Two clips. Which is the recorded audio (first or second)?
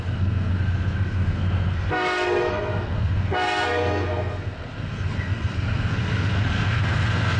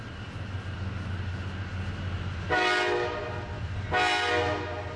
second